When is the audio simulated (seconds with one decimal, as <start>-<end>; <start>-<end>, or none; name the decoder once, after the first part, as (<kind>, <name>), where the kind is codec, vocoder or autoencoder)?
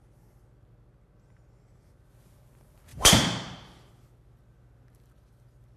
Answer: 2.9-3.9 (vocoder, BigVGAN v2)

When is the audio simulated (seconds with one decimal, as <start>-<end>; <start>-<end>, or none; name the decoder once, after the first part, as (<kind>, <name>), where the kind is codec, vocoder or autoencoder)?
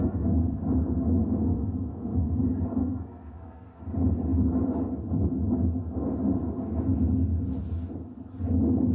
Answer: 0.0-0.6 (codec, SNAC); 1.2-2.4; 2.8-3.8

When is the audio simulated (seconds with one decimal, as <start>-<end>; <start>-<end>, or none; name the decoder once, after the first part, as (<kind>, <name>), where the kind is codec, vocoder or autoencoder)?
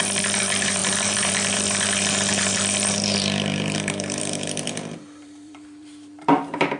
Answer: 0.0-6.8 (vocoder, BigVGAN v2)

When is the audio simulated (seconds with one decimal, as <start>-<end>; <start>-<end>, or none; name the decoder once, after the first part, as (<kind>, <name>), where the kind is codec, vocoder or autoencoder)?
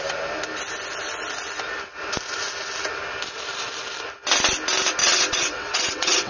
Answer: 5.0-6.3 (vocoder, WaveNeXt)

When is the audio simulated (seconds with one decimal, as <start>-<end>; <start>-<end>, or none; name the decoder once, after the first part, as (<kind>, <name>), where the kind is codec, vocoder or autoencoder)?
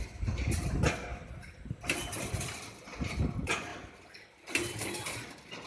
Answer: 1.1-3.1 (vocoder, BigVGAN v2); 3.7-5.2